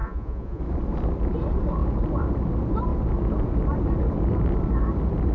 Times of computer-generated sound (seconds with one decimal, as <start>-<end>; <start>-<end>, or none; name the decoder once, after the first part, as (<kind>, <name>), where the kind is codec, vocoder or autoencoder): 0.0-0.6 (vocoder, Vocos)